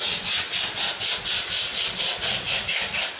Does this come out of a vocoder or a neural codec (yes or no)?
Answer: no